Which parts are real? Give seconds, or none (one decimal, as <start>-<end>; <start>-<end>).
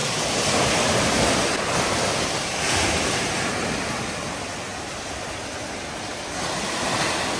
0.7-7.4